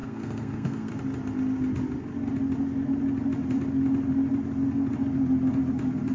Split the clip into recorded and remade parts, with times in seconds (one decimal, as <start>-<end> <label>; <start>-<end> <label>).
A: 0.0-0.9 remade; 0.9-6.1 recorded